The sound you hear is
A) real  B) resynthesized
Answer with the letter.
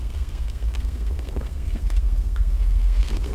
B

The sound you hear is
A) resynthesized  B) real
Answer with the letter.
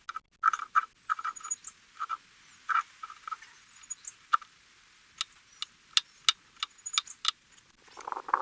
B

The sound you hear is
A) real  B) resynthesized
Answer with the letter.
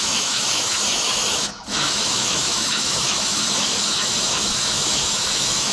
B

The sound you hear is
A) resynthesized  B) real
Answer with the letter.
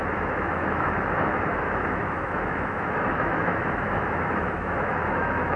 A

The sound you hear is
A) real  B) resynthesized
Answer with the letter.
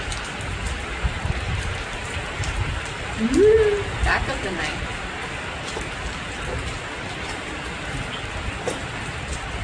A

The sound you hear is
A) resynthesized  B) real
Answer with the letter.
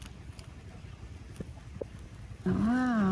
B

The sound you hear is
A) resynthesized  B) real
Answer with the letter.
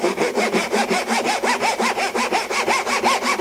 B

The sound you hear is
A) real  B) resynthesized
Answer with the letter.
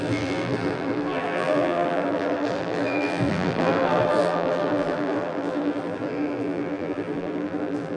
B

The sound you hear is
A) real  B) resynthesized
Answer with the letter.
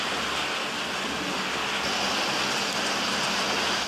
A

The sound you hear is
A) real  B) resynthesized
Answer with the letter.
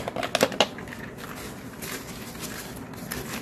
A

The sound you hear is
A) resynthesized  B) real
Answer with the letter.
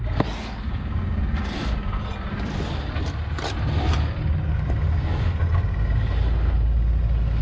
B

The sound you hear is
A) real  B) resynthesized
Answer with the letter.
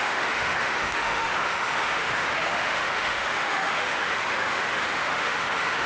B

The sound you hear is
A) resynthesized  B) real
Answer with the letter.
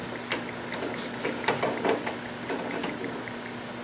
B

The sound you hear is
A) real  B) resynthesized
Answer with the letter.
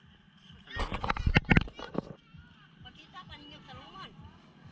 A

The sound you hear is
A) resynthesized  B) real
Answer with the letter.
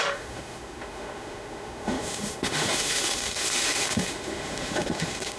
A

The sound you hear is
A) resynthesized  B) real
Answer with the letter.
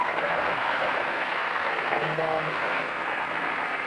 A